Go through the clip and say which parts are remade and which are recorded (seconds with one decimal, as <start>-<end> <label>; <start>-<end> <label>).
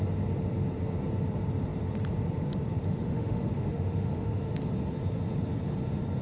0.0-2.8 recorded; 2.8-4.5 remade; 4.5-6.2 recorded